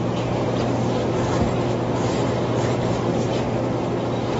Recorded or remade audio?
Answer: recorded